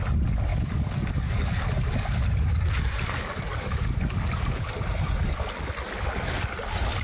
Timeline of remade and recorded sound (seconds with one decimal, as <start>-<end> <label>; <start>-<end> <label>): 0.0-0.5 recorded; 0.5-4.7 remade; 4.7-7.0 recorded